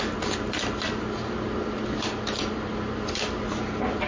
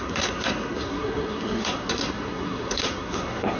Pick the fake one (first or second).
second